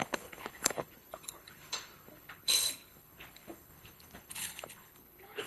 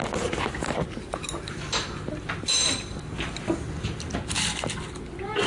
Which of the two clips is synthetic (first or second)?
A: first